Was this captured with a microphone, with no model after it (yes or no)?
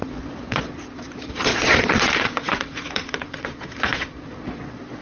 no